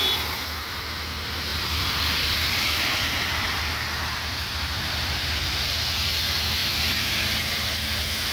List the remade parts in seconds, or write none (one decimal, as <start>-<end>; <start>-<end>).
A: 1.5-5.7; 6.6-7.4